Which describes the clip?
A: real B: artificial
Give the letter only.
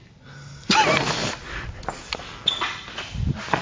A